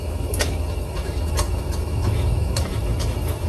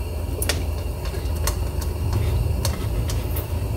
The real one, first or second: second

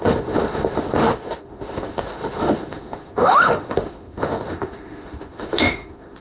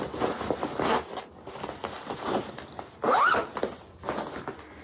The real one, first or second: second